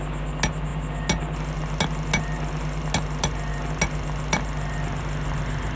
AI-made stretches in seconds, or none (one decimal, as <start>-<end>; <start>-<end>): none